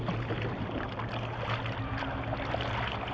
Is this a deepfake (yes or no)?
no